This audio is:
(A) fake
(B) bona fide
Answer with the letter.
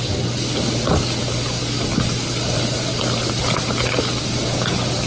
B